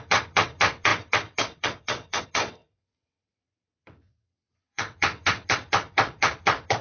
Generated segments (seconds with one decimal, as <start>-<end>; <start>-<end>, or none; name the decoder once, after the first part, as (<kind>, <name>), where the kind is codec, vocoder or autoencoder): 0.0-6.8 (vocoder, WaveNeXt)